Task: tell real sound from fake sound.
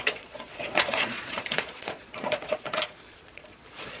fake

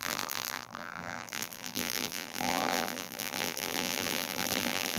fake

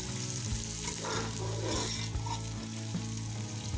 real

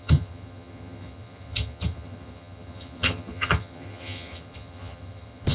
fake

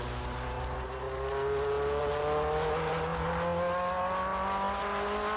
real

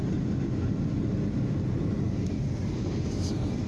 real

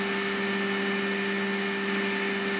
real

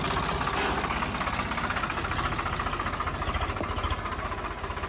real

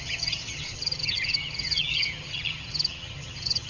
fake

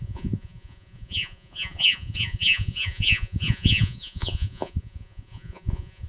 fake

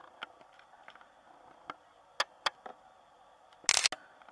real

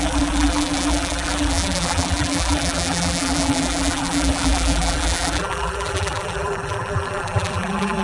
fake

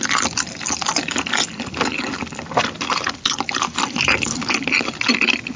real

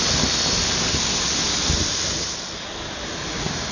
real